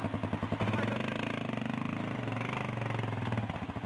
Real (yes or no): yes